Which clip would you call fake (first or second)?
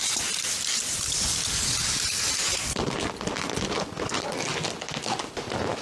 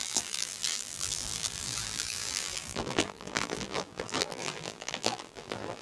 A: second